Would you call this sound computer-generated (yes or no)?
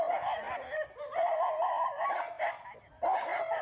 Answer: no